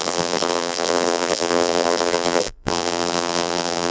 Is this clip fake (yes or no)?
yes